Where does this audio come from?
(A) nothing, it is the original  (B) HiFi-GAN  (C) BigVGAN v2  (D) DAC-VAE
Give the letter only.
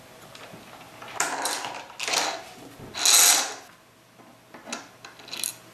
A